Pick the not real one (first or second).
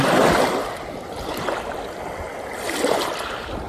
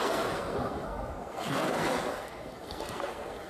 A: second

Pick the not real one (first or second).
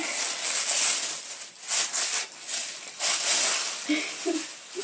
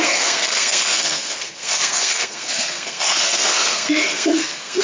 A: second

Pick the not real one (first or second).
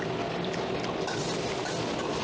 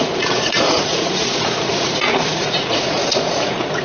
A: second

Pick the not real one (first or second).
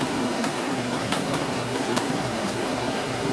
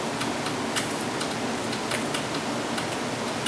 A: first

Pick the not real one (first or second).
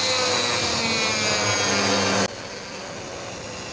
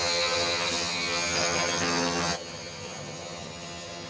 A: second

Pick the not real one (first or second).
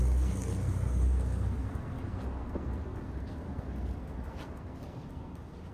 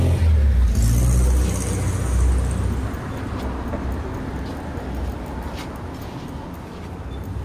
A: first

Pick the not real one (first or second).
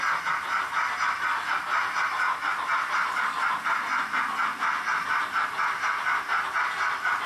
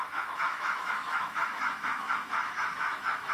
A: second